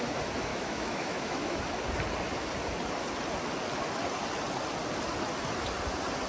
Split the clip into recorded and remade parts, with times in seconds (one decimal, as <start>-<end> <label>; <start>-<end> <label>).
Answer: 0.0-0.5 recorded; 0.5-1.6 remade; 1.6-6.3 recorded